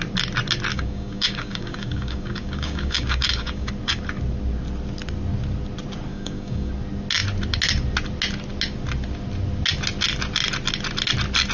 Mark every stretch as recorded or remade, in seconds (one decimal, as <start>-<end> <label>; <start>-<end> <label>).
0.0-0.7 recorded; 0.7-3.7 remade; 3.7-6.1 recorded; 6.1-6.7 remade; 6.7-11.5 recorded